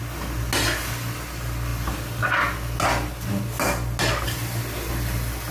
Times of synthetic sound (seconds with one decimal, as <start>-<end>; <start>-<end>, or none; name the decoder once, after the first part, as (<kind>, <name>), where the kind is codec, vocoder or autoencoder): none